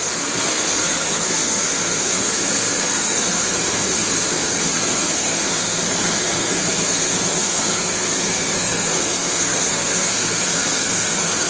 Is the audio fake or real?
fake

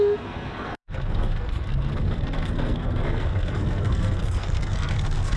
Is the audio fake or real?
fake